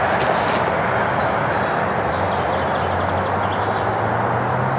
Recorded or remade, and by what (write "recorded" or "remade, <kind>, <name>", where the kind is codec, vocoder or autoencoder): recorded